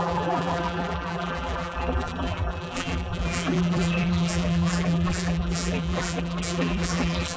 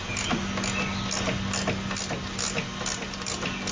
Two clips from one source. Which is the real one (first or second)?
second